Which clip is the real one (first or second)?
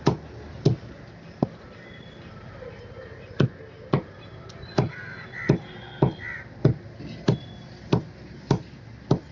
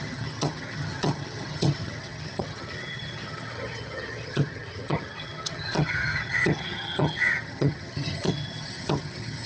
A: first